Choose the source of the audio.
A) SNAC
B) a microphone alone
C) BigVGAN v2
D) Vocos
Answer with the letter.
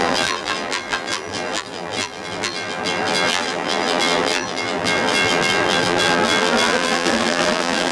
C